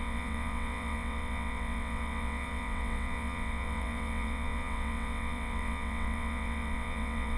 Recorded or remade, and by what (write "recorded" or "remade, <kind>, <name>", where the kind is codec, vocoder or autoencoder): remade, vocoder, WaveNeXt